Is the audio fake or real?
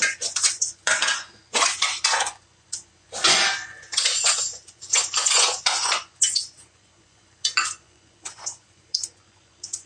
fake